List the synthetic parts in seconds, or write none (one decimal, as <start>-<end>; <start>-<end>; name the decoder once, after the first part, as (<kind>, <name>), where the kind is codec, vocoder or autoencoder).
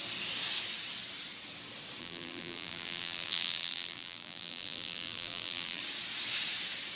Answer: 2.0-5.8 (vocoder, BigVGAN v2)